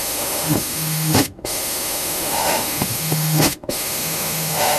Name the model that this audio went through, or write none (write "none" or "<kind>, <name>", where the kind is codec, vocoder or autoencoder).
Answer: autoencoder, DAC-VAE